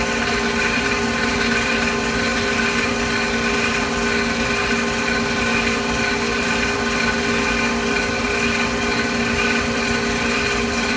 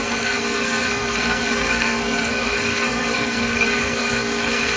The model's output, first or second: second